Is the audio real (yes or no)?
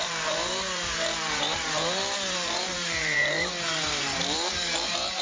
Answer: no